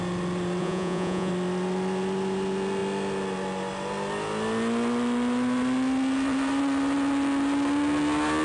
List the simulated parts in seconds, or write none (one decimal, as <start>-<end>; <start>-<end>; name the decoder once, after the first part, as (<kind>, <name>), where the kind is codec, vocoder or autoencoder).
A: 0.6-1.3 (vocoder, Vocos)